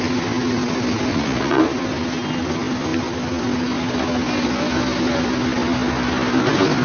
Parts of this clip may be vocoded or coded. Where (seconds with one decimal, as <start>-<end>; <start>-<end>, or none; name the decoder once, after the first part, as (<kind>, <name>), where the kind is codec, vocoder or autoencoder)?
1.1-1.6 (vocoder, Vocos)